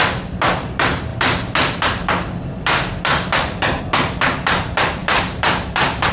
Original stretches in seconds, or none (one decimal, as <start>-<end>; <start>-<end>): 0.0-6.1